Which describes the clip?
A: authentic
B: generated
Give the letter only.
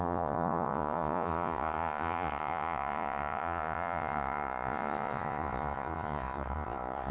B